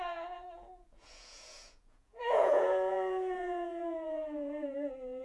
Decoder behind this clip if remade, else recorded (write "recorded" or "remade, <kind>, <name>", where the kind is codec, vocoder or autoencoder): remade, vocoder, Vocos